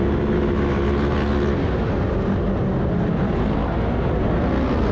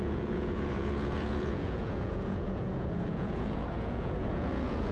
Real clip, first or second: first